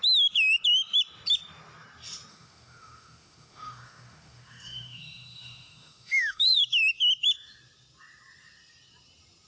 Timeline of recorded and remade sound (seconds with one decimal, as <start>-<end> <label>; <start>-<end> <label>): 0.0-2.3 recorded; 2.3-6.6 remade; 6.6-9.5 recorded